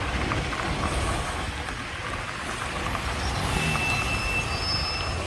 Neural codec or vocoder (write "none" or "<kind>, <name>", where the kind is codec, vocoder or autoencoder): none